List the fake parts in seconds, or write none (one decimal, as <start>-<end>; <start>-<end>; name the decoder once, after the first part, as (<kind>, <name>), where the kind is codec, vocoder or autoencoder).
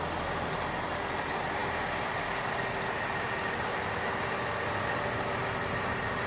none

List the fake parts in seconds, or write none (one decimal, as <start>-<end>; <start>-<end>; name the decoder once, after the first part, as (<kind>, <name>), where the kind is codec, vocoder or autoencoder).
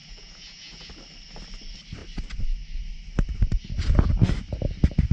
0.0-0.9 (vocoder, Vocos)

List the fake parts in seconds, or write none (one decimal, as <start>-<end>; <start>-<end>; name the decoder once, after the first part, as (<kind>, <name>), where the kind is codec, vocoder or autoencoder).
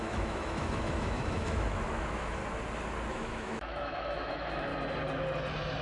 0.0-2.4 (autoencoder, DAC-VAE); 3.1-4.7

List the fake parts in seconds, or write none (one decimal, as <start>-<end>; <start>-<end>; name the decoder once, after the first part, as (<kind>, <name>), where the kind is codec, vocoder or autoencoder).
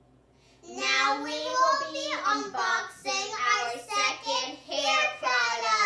0.0-1.5 (vocoder, Vocos); 2.3-3.0; 4.1-5.9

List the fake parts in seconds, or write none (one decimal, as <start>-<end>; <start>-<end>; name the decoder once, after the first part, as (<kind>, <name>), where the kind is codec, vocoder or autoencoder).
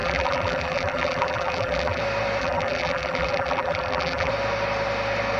0.0-2.0 (vocoder, BigVGAN v2); 2.4-4.3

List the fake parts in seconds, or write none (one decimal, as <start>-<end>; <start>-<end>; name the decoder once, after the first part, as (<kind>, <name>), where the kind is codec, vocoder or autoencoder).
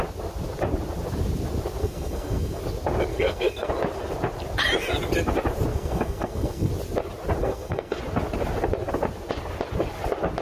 1.8-2.6 (codec, SNAC); 3.1-3.7; 5.7-6.7; 7.4-8.0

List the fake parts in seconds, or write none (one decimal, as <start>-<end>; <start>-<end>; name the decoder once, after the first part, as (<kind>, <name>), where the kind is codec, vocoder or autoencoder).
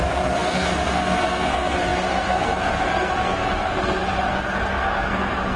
0.0-5.6 (codec, SNAC)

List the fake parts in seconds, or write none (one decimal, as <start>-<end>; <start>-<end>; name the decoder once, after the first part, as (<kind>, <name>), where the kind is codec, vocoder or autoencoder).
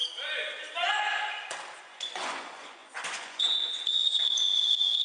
1.8-5.0 (vocoder, Vocos)